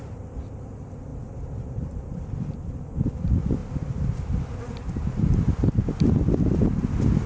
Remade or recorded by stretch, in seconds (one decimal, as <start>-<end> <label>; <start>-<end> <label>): 0.0-1.1 recorded; 1.1-2.5 remade; 2.5-7.3 recorded